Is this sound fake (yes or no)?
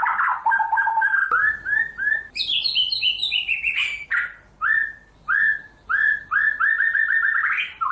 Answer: no